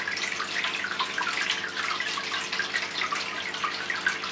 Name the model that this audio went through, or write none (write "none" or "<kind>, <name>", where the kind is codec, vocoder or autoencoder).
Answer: none